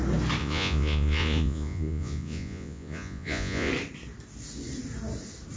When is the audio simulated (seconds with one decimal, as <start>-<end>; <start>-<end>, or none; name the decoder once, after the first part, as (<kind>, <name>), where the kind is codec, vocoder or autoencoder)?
0.4-3.7 (vocoder, Vocos)